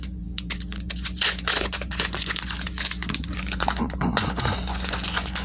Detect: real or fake fake